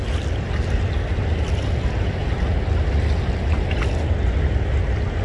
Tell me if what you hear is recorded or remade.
recorded